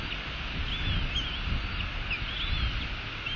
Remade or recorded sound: recorded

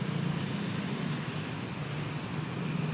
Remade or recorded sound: recorded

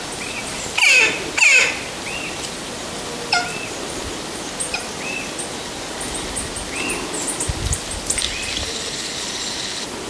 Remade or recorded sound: recorded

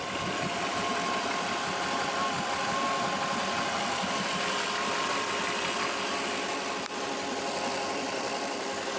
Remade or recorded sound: recorded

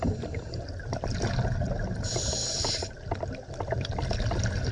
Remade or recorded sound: recorded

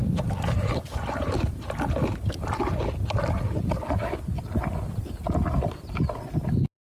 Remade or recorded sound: recorded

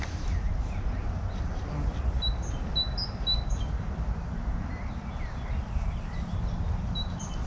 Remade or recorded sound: recorded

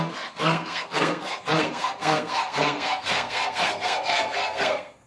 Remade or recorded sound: remade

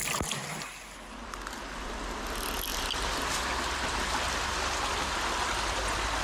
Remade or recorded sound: recorded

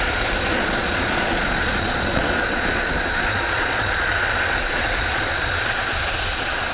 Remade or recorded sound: remade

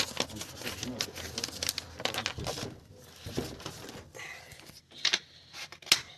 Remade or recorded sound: recorded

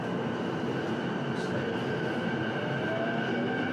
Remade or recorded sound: recorded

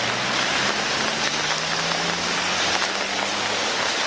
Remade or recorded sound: recorded